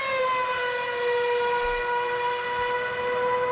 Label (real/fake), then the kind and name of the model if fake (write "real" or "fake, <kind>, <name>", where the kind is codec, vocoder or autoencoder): real